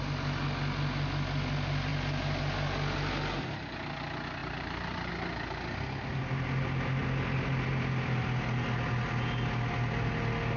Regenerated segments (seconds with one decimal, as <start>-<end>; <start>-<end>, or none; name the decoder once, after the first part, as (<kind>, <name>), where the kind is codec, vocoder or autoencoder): 4.4-5.1 (vocoder, BigVGAN v2)

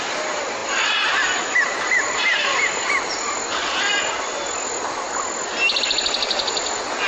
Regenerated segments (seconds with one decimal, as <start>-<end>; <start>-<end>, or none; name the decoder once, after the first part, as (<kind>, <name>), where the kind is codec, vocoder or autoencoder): none

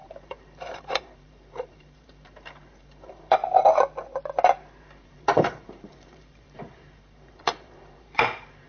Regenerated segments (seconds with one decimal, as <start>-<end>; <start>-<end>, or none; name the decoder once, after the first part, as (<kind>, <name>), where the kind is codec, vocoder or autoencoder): 0.0-3.4 (vocoder, BigVGAN v2); 4.8-8.7